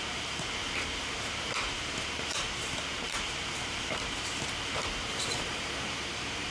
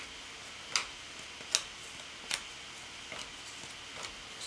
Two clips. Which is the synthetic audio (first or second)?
first